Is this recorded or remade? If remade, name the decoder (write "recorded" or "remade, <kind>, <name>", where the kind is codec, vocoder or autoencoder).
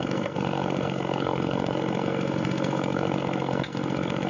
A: remade, codec, SNAC